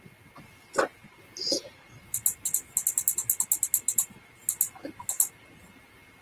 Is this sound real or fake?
real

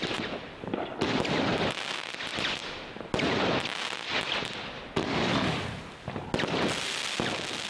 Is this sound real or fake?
real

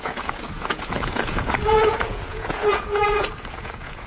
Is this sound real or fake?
fake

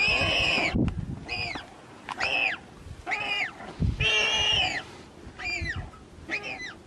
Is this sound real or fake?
real